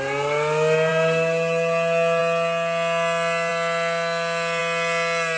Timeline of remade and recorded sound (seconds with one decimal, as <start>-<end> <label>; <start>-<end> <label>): 0.0-5.4 recorded